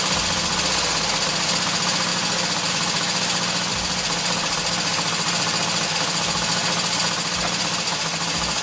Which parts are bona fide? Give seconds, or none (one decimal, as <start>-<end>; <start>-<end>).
0.0-8.6